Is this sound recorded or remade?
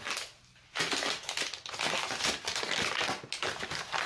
recorded